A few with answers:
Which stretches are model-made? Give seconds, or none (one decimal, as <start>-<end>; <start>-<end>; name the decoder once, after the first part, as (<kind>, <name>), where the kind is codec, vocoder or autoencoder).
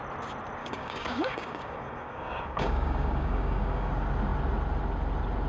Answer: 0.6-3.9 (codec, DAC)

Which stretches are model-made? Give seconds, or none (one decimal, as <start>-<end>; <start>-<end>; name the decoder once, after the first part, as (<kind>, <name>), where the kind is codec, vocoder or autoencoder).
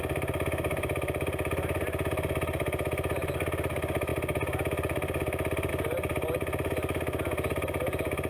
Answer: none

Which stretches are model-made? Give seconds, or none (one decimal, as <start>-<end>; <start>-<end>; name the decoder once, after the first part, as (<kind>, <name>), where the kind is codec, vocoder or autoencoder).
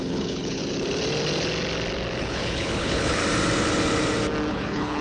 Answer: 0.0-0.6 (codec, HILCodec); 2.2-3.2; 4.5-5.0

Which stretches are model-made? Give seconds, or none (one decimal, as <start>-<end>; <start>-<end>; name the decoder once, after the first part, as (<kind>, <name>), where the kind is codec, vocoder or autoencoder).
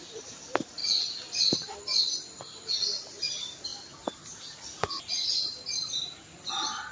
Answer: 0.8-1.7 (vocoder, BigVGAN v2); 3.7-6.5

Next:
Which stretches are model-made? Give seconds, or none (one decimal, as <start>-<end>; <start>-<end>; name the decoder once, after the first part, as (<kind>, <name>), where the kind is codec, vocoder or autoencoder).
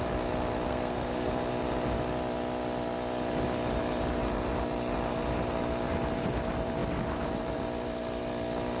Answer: 0.7-1.3 (codec, SNAC)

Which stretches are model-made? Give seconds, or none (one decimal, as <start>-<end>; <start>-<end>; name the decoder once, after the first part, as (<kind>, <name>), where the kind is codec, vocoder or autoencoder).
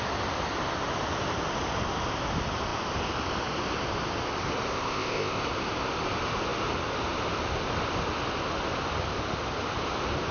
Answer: 4.7-5.4 (codec, ZipCodec)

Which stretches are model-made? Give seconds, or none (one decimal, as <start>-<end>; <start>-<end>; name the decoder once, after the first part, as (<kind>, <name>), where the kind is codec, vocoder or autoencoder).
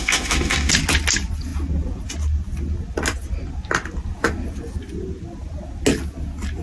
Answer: 0.0-0.7 (autoencoder, DAC-VAE)